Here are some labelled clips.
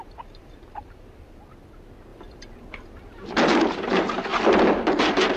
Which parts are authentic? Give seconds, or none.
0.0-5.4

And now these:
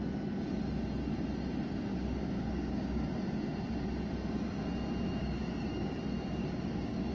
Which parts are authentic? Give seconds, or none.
0.0-1.9; 3.1-5.2; 6.0-6.4

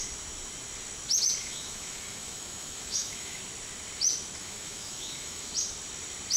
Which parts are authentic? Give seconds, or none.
0.0-1.4; 3.4-4.4; 5.5-6.4

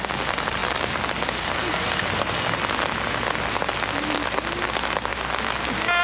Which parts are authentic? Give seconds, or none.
0.0-6.0

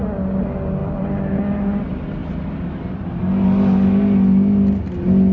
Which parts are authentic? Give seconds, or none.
0.0-0.8; 1.4-2.2; 3.2-5.3

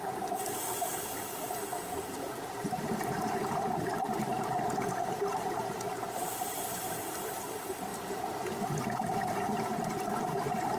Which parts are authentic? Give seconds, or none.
4.3-5.0; 7.9-8.9